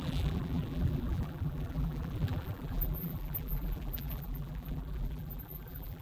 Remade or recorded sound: remade